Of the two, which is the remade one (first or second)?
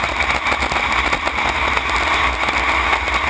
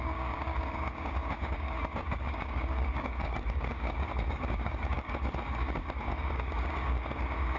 second